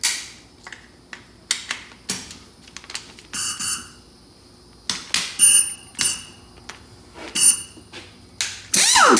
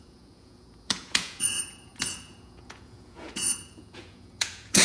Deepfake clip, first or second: second